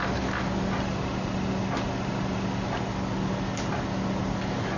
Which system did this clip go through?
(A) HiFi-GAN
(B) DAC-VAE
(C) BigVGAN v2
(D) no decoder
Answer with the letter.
D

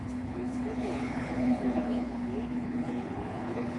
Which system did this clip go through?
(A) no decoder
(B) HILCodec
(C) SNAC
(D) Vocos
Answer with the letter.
B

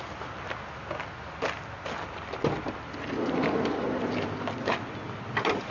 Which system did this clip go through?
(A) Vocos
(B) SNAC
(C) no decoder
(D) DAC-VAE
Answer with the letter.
C